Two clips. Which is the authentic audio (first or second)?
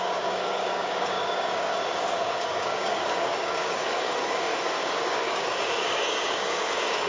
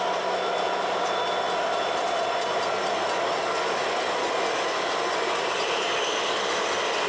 second